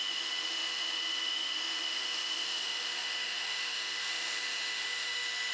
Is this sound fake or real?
fake